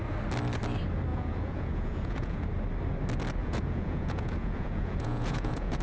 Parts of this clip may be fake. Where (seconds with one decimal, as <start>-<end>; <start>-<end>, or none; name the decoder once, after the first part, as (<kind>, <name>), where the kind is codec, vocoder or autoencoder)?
1.1-2.4 (vocoder, Vocos); 3.4-5.8